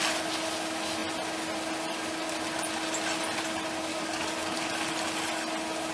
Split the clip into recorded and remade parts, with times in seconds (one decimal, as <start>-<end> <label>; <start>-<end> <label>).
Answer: 0.0-3.9 recorded; 3.9-4.7 remade; 4.7-5.9 recorded